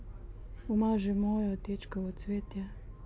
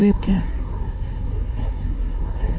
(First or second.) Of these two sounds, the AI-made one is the second